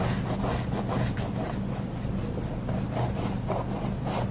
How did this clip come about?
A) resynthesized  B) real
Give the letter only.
B